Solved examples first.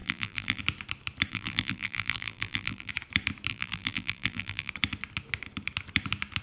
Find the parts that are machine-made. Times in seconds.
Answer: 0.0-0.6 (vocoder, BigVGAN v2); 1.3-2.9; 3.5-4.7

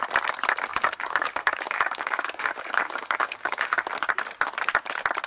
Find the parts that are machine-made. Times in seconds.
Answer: 0.7-3.9 (codec, DAC)

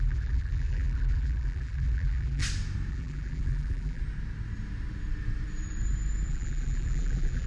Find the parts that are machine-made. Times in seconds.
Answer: 0.0-2.4 (vocoder, BigVGAN v2); 2.9-4.0; 6.3-7.5